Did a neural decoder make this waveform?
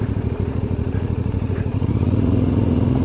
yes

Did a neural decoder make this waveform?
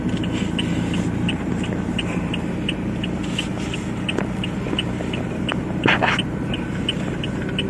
no